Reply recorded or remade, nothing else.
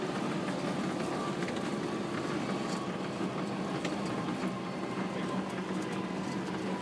recorded